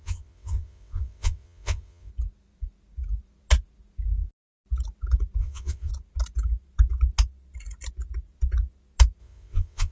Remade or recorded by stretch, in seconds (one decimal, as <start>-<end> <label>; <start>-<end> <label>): 0.0-2.1 remade; 2.1-5.4 recorded; 5.4-5.9 remade; 5.9-9.2 recorded; 9.2-9.9 remade